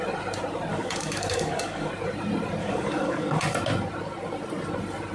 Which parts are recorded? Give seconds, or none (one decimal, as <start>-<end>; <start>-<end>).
0.0-0.7; 1.9-2.6; 3.4-5.1